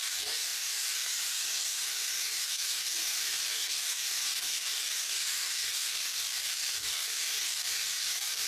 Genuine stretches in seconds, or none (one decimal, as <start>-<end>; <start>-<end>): none